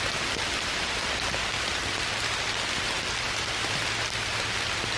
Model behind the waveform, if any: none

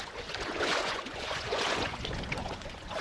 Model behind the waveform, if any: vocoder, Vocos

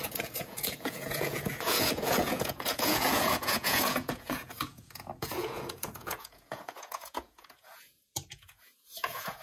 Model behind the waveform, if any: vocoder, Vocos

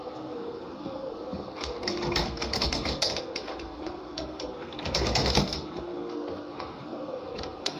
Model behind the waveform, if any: codec, SNAC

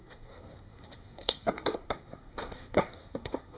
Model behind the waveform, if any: codec, SNAC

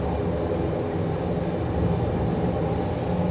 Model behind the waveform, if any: none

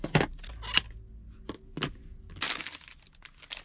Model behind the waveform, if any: none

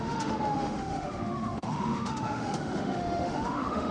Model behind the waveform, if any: autoencoder, DAC-VAE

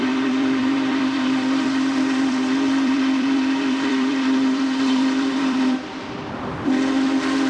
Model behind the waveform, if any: vocoder, BigVGAN v2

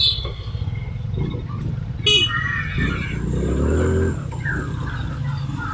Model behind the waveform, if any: none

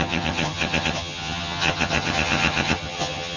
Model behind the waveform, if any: vocoder, HiFi-GAN